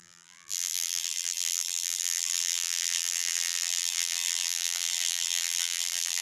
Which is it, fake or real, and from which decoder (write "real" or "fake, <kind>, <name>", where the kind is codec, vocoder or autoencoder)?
fake, vocoder, BigVGAN v2